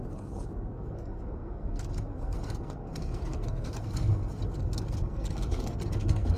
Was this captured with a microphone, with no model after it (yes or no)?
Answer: no